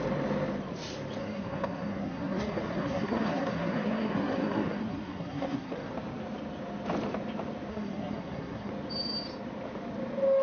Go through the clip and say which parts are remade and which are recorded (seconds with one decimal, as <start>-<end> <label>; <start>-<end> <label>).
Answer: 0.0-1.2 recorded; 1.2-5.9 remade; 5.9-7.7 recorded; 7.7-8.7 remade; 8.7-10.4 recorded

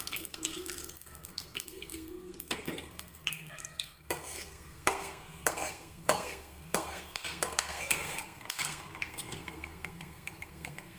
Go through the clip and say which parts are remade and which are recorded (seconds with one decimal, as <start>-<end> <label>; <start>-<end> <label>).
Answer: 0.0-11.0 remade

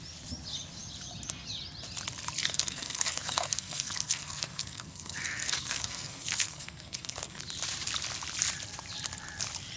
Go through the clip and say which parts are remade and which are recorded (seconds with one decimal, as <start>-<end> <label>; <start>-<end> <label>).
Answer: 0.0-2.4 recorded; 2.4-7.4 remade; 7.4-9.8 recorded

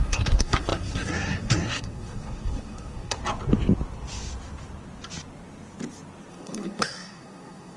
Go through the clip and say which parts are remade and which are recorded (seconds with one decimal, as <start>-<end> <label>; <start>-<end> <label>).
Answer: 0.0-3.2 remade; 3.2-6.3 recorded; 6.3-7.8 remade

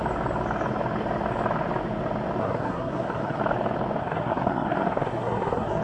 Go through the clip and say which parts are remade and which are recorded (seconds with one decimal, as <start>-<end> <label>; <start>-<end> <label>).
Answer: 0.0-2.4 recorded; 2.4-3.4 remade; 3.4-4.0 recorded; 4.0-5.8 remade